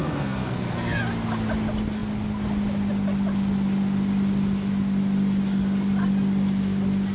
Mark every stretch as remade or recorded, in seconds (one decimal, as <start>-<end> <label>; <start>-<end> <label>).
0.0-1.0 remade; 1.0-7.1 recorded